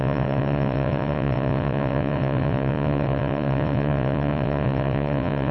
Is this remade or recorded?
remade